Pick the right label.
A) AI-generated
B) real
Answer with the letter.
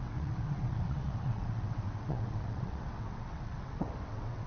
A